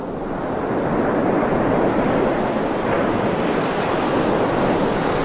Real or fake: real